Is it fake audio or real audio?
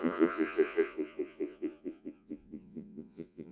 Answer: fake